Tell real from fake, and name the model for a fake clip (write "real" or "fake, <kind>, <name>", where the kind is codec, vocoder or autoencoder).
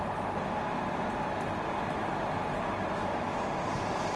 real